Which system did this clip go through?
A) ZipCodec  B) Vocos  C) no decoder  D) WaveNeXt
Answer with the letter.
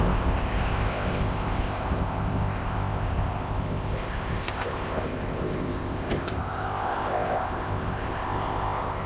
A